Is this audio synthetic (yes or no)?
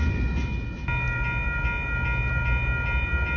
no